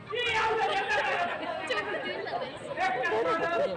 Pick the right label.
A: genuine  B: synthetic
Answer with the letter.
A